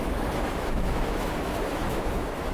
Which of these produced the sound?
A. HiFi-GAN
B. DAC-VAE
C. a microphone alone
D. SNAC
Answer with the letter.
B